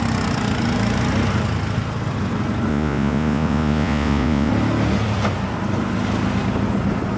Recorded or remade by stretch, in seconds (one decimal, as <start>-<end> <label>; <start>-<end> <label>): 0.0-2.7 recorded; 2.7-4.5 remade; 4.5-7.2 recorded